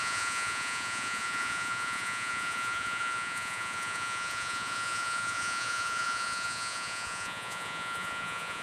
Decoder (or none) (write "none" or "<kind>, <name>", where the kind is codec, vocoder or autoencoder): vocoder, Vocos